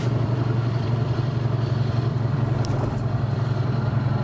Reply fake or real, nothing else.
fake